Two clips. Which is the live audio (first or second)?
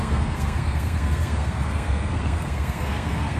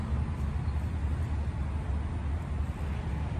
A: second